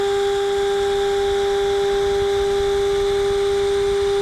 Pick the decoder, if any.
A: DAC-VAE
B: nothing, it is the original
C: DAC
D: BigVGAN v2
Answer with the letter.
B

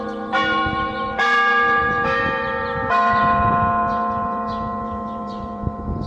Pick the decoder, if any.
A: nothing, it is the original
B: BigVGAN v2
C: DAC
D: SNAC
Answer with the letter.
B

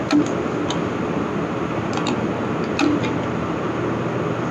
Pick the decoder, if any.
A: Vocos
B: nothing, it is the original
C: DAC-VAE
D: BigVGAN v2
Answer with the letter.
B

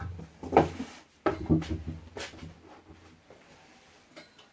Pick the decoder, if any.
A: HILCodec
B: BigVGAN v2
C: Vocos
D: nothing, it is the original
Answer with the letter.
B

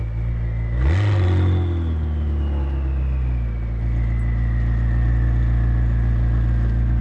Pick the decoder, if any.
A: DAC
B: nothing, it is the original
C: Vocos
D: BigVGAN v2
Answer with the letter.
B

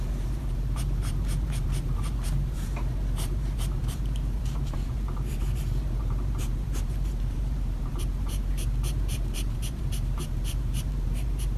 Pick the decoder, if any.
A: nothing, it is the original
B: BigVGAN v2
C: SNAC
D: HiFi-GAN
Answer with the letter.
B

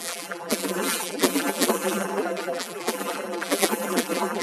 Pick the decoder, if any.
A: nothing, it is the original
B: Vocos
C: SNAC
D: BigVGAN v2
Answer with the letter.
D